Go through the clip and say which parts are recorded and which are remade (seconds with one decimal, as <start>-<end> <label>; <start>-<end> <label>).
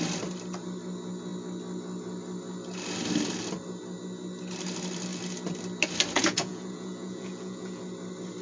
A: 0.0-6.2 recorded; 6.2-7.8 remade; 7.8-8.4 recorded